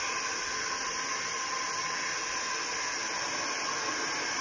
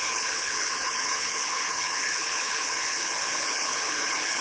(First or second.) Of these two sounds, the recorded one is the first